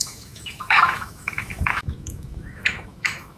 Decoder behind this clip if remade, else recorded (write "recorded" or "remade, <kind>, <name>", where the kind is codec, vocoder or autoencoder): remade, autoencoder, DAC-VAE